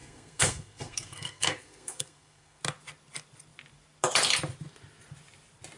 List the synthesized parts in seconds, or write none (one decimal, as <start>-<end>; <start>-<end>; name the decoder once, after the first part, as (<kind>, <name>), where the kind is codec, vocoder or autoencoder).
0.0-2.6 (codec, SNAC)